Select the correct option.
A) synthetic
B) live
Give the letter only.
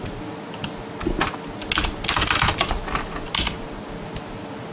B